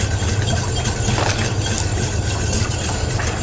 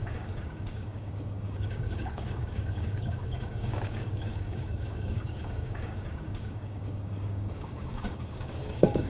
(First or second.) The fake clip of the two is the second